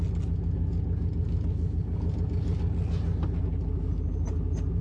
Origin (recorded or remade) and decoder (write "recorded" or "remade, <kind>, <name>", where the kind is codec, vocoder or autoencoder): recorded